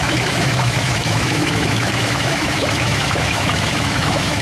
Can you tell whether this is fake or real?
fake